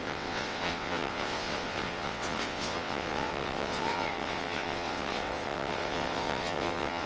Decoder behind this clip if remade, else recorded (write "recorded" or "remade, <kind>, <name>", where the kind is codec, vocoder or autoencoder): remade, vocoder, WaveNeXt